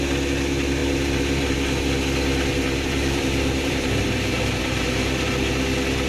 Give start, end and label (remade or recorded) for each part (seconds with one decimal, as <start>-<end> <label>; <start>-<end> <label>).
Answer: 0.0-0.8 recorded; 0.8-1.8 remade; 1.8-2.5 recorded; 2.5-5.5 remade; 5.5-6.1 recorded